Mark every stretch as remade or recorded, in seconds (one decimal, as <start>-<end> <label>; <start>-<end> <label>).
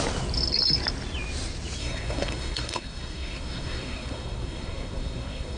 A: 0.0-1.8 recorded; 1.8-5.6 remade